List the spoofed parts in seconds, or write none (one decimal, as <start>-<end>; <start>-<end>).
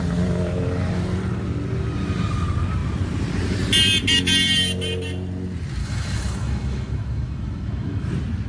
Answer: 5.8-8.1